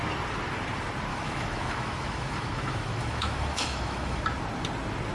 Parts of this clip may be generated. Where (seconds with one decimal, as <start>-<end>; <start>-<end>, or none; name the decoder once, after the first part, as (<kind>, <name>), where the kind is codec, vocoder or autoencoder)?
1.1-4.2 (autoencoder, DAC-VAE)